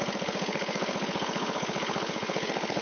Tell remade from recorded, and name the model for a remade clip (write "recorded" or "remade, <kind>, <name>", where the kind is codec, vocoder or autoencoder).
remade, codec, HILCodec